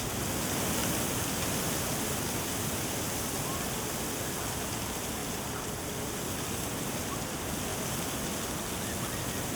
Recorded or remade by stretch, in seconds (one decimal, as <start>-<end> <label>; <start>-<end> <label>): 0.0-9.6 recorded